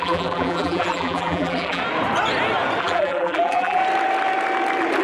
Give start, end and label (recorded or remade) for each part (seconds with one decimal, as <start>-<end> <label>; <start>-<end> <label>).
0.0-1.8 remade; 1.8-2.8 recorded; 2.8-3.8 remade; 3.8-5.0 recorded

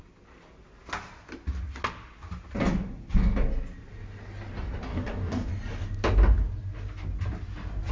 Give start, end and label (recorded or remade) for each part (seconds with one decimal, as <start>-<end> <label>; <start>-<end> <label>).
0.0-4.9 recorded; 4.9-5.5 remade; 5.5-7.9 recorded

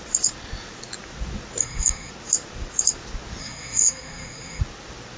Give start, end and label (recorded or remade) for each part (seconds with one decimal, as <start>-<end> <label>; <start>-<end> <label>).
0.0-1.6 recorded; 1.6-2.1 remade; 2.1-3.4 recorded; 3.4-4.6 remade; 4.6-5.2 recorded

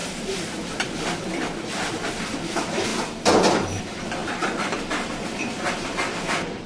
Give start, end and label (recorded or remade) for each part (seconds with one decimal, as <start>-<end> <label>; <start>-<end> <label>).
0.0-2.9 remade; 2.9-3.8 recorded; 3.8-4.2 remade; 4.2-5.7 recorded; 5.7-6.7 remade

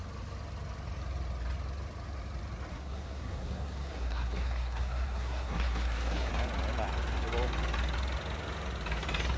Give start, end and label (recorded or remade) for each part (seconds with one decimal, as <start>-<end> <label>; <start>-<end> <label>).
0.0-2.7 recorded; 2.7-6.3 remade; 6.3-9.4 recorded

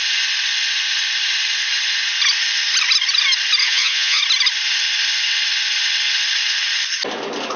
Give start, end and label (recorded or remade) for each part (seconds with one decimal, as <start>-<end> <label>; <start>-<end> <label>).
0.0-3.6 recorded; 3.6-4.2 remade; 4.2-7.6 recorded